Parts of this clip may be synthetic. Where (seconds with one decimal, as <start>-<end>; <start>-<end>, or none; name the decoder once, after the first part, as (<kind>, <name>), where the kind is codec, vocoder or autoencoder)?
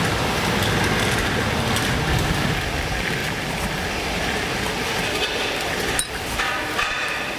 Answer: 3.2-3.9 (vocoder, BigVGAN v2)